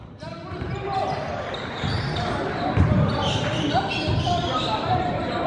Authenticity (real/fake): fake